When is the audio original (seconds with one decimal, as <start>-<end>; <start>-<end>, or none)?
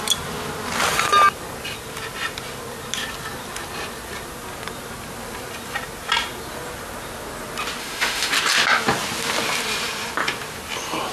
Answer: 0.0-7.8; 8.3-11.1